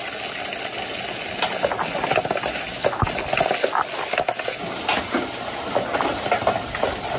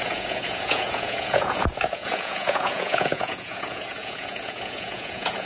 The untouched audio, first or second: first